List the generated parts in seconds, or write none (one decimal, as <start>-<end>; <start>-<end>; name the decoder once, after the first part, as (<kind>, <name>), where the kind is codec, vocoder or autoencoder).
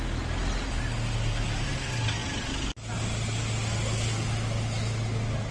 none